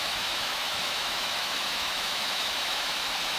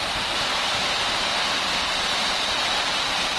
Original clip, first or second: second